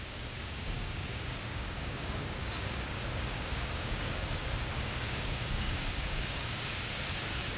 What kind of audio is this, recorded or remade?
remade